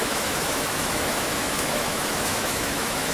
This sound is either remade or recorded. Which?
remade